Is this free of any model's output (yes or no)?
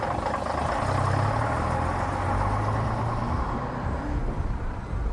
yes